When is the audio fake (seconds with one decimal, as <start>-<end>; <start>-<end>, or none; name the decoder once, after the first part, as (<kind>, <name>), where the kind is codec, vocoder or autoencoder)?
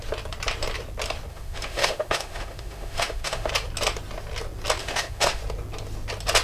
1.3-3.5 (autoencoder, DAC-VAE); 4.8-5.4